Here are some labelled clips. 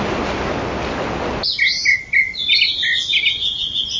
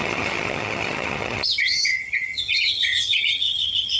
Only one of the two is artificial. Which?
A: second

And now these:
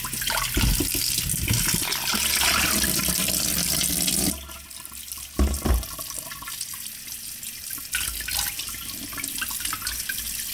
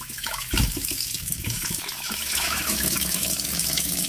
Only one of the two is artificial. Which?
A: second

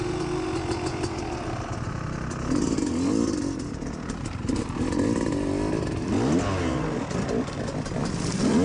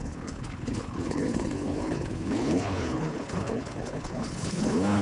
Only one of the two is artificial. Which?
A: second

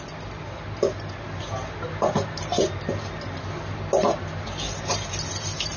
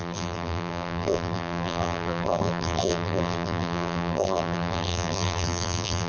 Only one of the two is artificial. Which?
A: second